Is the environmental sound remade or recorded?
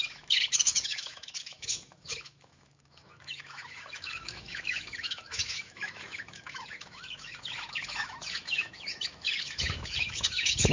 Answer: remade